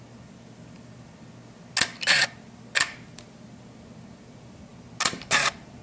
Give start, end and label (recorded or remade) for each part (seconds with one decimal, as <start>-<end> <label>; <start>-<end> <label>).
0.0-5.8 recorded